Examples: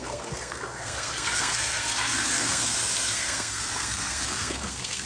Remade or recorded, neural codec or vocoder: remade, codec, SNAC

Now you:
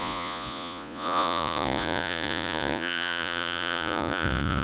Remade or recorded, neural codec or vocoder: remade, vocoder, Vocos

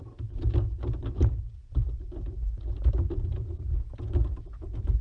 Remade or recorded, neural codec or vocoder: recorded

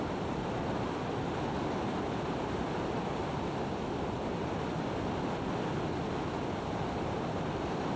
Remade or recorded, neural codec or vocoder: recorded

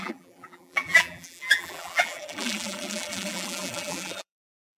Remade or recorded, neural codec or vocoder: remade, vocoder, BigVGAN v2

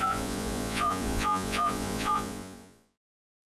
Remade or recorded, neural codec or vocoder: remade, vocoder, Vocos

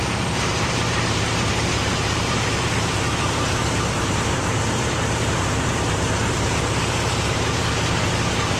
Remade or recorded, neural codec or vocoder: remade, vocoder, BigVGAN v2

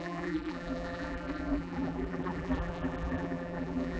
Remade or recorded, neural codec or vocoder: remade, vocoder, BigVGAN v2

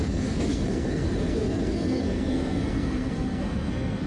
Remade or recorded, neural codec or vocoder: remade, codec, SNAC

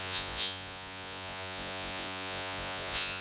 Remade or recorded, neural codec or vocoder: remade, vocoder, Vocos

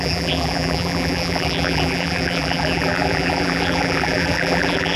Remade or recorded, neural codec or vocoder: remade, vocoder, BigVGAN v2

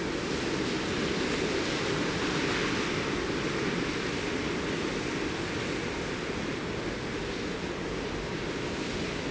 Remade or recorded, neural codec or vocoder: recorded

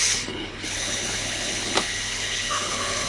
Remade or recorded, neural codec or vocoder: remade, codec, HILCodec